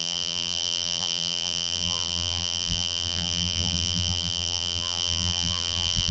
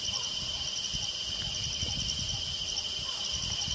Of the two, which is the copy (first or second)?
first